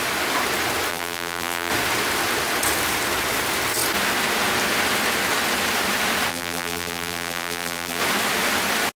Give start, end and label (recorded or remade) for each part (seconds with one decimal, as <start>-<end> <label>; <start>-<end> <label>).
0.0-0.9 recorded; 0.9-1.7 remade; 1.7-6.3 recorded; 6.3-8.0 remade; 8.0-9.0 recorded